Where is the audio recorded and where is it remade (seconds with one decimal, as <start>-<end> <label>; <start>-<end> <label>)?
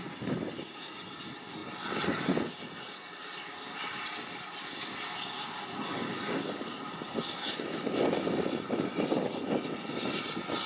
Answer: 0.0-10.7 recorded